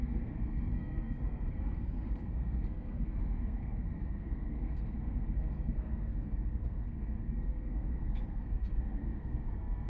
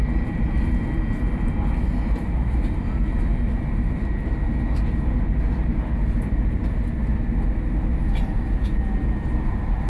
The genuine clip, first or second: second